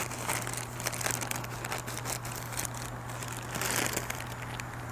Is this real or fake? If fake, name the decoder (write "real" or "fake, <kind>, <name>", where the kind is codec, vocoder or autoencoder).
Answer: real